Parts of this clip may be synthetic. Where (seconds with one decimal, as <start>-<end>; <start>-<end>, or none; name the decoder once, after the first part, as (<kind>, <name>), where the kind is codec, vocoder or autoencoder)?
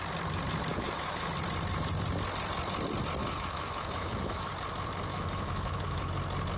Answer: 0.7-1.3 (autoencoder, DAC-VAE); 3.2-4.5; 5.1-6.1